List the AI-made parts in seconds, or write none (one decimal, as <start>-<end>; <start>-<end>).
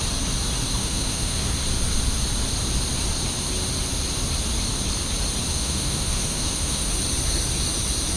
0.8-1.5; 5.5-6.9